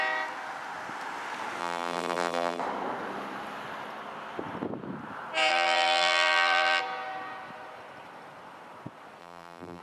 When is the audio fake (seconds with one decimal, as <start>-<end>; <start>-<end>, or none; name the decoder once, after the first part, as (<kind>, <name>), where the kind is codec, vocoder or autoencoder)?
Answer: 1.6-2.6 (vocoder, BigVGAN v2); 5.5-6.8; 9.2-9.8